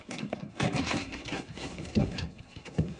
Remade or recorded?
remade